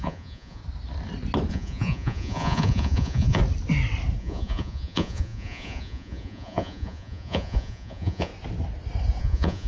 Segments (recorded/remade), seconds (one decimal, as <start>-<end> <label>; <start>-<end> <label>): 0.0-0.6 remade; 0.6-1.5 recorded; 1.5-3.4 remade; 3.4-4.2 recorded; 4.2-8.3 remade; 8.3-9.2 recorded; 9.2-9.7 remade